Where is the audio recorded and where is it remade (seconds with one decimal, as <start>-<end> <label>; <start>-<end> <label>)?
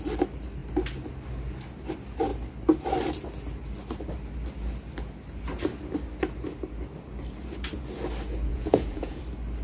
0.0-8.5 recorded; 8.5-9.2 remade; 9.2-9.6 recorded